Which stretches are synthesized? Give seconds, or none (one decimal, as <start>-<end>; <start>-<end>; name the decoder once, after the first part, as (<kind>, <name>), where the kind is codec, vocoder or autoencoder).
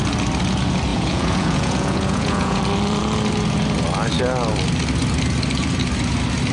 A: 0.9-2.6 (vocoder, Vocos)